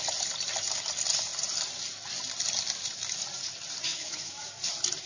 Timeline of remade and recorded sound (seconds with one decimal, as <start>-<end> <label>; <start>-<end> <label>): 0.0-3.9 recorded; 3.9-4.5 remade; 4.5-5.1 recorded